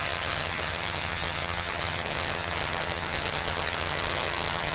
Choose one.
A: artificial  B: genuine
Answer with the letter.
A